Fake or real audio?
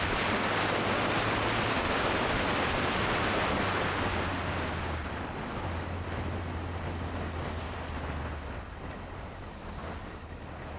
real